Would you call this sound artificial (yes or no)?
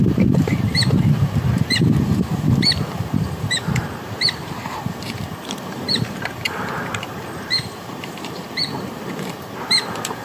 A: yes